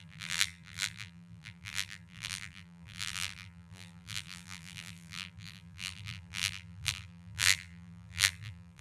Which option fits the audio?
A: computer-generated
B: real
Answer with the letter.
A